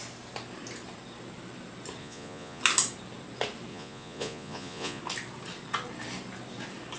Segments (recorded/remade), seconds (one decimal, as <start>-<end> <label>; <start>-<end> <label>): 0.0-2.0 recorded; 2.0-2.6 remade; 2.6-3.7 recorded; 3.7-5.0 remade; 5.0-7.0 recorded